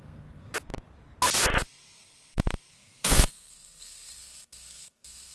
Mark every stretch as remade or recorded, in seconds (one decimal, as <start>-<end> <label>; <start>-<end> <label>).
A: 0.0-0.5 remade; 0.5-2.7 recorded; 2.7-5.3 remade